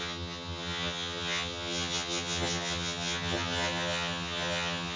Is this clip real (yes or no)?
no